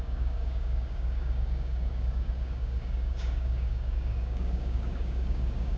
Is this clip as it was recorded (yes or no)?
no